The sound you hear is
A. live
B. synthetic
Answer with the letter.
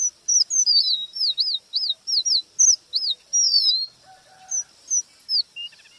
A